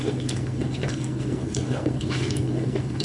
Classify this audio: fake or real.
fake